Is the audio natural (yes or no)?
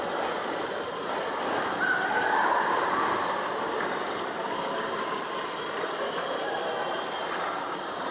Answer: yes